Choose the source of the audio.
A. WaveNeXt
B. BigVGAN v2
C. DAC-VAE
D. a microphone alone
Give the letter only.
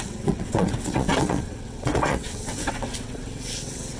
A